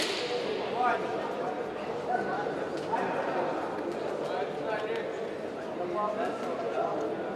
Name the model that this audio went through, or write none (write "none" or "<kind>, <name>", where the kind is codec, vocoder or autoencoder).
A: none